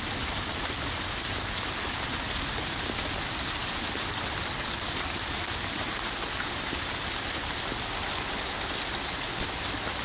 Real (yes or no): yes